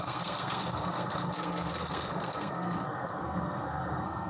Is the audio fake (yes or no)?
yes